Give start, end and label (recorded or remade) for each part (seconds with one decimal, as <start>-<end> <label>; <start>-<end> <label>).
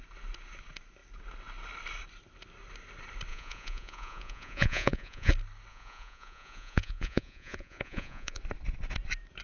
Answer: 0.0-3.3 recorded; 3.3-5.3 remade; 5.3-5.7 recorded; 5.7-8.4 remade; 8.4-9.4 recorded